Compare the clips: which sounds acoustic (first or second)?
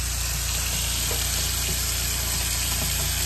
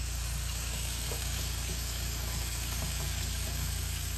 first